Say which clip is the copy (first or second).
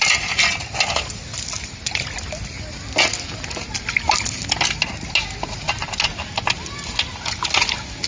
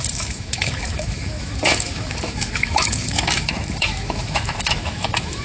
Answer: second